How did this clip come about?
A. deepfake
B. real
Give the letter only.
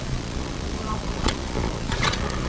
A